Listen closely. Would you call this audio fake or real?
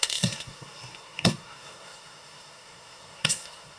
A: fake